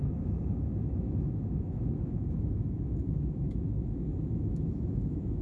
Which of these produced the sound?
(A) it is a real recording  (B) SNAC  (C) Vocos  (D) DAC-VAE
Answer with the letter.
D